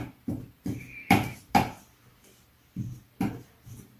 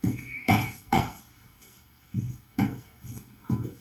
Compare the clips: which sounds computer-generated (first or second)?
second